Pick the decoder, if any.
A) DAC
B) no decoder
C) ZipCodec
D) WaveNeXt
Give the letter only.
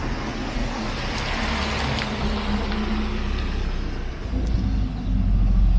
B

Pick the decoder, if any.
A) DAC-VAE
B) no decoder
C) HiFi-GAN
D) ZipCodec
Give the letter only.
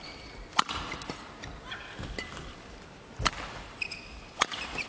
B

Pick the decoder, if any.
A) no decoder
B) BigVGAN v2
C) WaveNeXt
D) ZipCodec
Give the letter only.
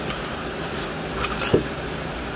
A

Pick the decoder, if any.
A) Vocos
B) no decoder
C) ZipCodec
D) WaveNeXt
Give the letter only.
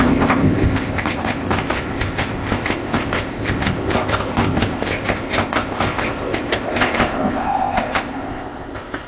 C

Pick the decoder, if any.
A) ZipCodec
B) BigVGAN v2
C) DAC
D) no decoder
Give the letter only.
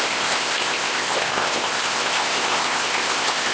A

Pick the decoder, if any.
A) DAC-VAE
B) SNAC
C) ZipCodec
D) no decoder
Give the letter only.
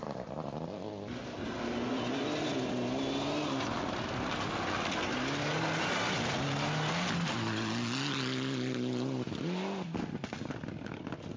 D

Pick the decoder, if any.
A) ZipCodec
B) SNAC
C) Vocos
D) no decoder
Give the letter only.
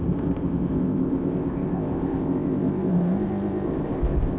A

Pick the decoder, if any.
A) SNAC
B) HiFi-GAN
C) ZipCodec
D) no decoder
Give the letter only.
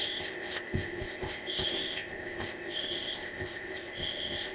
C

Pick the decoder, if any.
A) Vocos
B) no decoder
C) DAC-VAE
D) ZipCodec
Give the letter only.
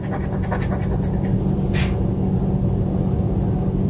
B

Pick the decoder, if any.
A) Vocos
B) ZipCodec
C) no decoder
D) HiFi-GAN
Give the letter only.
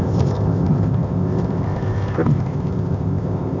B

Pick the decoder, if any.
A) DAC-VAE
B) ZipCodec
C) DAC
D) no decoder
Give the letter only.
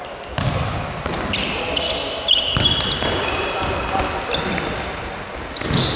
D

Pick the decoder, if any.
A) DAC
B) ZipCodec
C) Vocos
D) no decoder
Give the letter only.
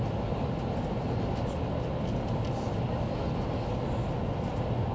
D